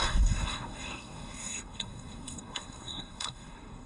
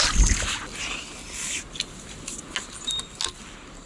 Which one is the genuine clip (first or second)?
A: second